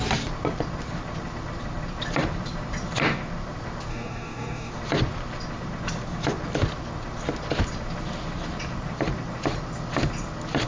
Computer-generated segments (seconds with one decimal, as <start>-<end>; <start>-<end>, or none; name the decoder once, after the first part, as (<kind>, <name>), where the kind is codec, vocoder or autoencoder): 3.9-4.7 (codec, DAC)